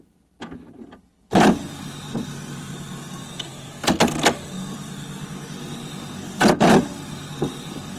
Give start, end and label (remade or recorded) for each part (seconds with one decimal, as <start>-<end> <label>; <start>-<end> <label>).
0.0-8.0 recorded